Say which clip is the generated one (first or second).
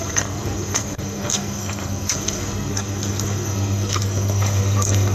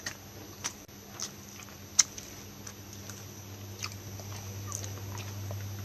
first